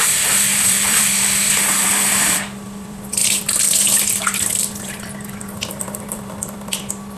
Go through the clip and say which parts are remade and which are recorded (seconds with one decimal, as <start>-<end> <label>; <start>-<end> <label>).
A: 0.0-3.2 remade; 3.2-5.7 recorded; 5.7-7.2 remade